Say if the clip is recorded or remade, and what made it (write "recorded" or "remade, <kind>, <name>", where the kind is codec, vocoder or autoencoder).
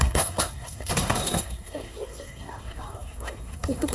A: remade, codec, SNAC